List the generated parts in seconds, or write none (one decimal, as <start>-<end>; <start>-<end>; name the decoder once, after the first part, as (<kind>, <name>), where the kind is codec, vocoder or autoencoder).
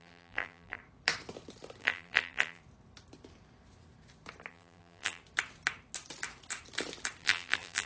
0.0-0.8 (vocoder, BigVGAN v2); 1.8-2.6; 4.5-5.2; 7.2-7.9